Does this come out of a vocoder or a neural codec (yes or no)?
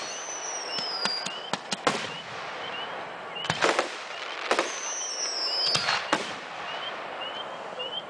no